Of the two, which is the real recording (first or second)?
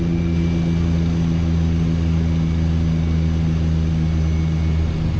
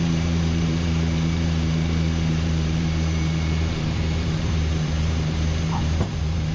first